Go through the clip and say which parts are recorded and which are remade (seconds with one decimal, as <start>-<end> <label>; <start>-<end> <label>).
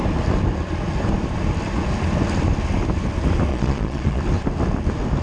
0.0-3.5 recorded; 3.5-4.2 remade; 4.2-5.2 recorded